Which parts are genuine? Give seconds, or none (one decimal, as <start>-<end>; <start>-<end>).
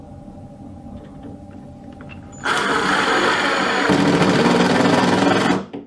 0.0-5.9